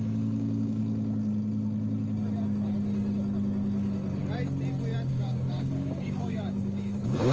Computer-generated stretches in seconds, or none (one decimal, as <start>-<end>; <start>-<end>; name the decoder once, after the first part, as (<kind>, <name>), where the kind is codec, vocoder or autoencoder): 0.0-0.8 (codec, DAC); 5.1-7.3